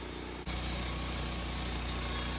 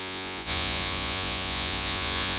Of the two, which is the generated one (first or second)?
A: second